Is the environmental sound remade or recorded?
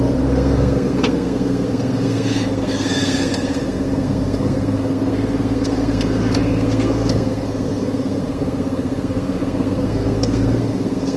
remade